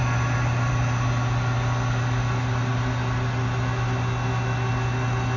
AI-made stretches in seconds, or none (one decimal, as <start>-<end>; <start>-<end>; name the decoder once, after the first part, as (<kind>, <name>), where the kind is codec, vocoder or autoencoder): none